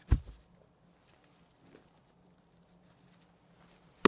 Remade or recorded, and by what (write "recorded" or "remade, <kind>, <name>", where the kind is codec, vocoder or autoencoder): recorded